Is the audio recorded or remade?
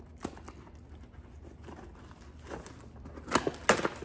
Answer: recorded